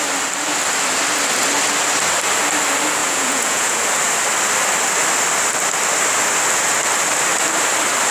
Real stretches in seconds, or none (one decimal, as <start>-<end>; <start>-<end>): 0.0-3.0; 3.8-8.1